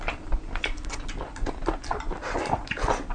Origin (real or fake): real